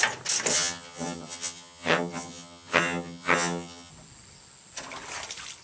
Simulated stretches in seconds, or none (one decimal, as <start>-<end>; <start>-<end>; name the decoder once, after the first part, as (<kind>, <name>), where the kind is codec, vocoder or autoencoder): 0.5-3.9 (vocoder, HiFi-GAN)